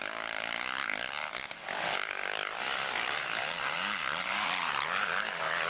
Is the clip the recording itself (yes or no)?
yes